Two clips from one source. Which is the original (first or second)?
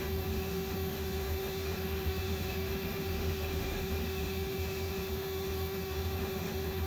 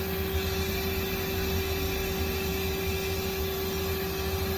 second